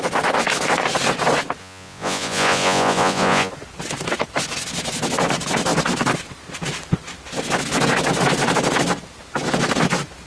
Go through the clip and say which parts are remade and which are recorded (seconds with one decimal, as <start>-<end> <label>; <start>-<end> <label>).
0.0-1.6 recorded; 1.6-3.5 remade; 3.5-10.3 recorded

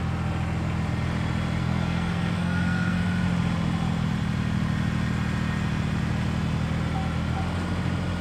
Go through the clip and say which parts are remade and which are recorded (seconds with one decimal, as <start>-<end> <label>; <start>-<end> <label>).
0.0-1.6 recorded; 1.6-3.0 remade; 3.0-8.2 recorded

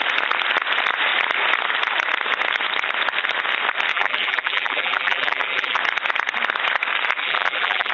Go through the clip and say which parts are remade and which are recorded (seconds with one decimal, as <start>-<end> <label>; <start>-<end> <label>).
0.0-3.9 recorded; 3.9-5.8 remade; 5.8-7.2 recorded; 7.2-7.9 remade

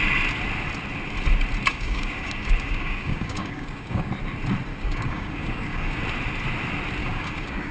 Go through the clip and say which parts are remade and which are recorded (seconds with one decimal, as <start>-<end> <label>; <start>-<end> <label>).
0.0-1.7 recorded; 1.7-4.1 remade; 4.1-4.7 recorded; 4.7-6.0 remade; 6.0-7.0 recorded; 7.0-7.7 remade

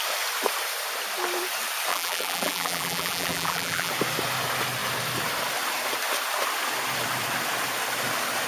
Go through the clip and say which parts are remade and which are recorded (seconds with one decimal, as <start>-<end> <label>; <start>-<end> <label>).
0.0-1.9 recorded; 1.9-3.9 remade; 3.9-8.5 recorded

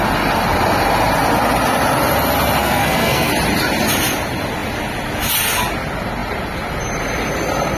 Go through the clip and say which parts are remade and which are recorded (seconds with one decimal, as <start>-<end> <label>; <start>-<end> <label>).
0.0-2.6 recorded; 2.6-3.3 remade; 3.3-7.8 recorded

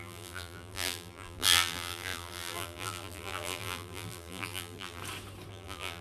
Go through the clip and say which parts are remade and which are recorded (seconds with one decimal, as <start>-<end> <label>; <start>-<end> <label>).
0.0-5.0 remade; 5.0-5.5 recorded; 5.5-6.0 remade

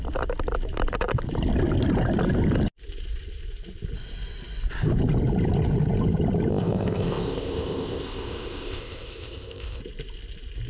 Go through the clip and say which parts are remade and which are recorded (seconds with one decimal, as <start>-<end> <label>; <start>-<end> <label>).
0.0-6.5 recorded; 6.5-9.8 remade; 9.8-10.7 recorded